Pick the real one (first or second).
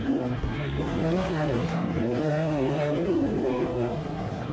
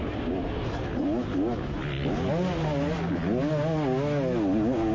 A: second